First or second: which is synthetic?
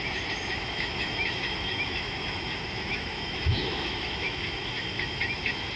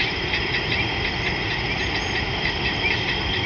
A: first